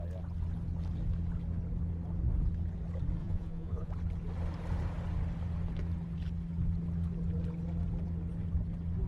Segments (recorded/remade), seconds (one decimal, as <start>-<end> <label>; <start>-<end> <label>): 0.0-3.2 recorded; 3.2-3.9 remade; 3.9-9.1 recorded